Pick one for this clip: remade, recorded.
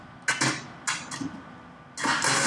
recorded